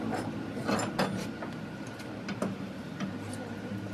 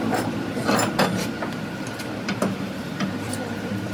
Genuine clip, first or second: first